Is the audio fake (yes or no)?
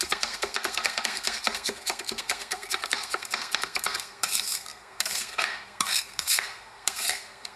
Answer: yes